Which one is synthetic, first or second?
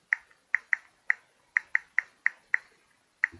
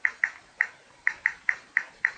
second